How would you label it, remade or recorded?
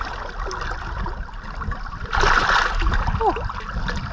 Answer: recorded